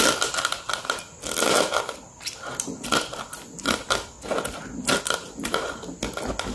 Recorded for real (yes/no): yes